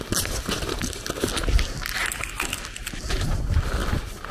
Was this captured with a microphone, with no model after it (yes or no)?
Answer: yes